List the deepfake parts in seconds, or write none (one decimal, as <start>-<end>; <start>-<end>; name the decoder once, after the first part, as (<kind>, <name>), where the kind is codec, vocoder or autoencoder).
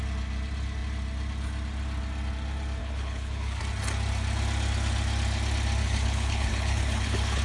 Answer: 2.8-3.6 (codec, HILCodec); 5.8-7.4